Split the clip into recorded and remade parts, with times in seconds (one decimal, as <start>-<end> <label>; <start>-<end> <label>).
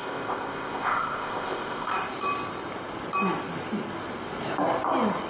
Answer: 0.0-1.9 remade; 1.9-5.3 recorded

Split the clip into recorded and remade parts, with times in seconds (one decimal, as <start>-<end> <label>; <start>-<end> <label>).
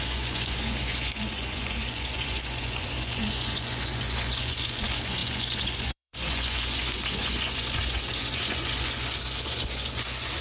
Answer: 0.0-10.4 remade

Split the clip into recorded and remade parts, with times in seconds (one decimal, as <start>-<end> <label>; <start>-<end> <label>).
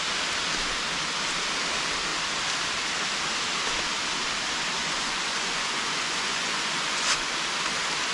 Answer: 0.0-4.8 recorded; 4.8-7.3 remade; 7.3-8.1 recorded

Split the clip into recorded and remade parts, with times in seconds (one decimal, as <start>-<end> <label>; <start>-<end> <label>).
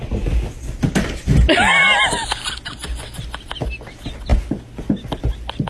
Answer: 0.0-5.7 recorded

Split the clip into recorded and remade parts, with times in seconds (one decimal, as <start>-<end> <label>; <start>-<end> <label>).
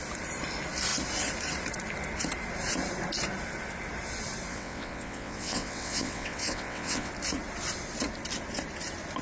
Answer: 0.0-4.5 recorded; 4.5-7.1 remade; 7.1-9.2 recorded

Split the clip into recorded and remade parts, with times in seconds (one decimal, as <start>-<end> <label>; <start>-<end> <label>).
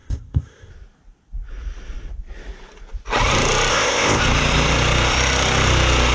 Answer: 0.0-0.7 remade; 0.7-3.7 recorded; 3.7-4.2 remade; 4.2-6.1 recorded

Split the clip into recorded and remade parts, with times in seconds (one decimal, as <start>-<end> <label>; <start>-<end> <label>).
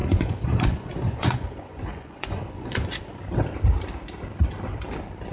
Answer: 0.0-3.0 remade; 3.0-5.3 recorded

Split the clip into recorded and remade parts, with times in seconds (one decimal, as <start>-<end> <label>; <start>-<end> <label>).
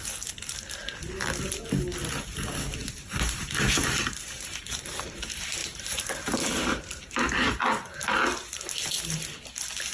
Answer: 0.0-2.8 recorded; 2.8-4.8 remade; 4.8-5.6 recorded; 5.6-7.5 remade; 7.5-9.9 recorded